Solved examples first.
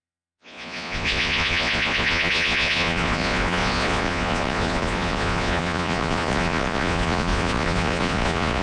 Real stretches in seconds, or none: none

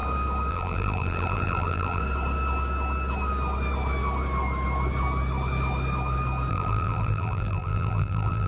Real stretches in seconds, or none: 0.0-0.5; 2.0-6.5

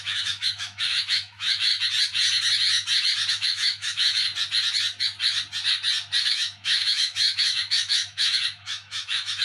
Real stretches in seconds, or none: 1.7-3.3; 4.3-6.2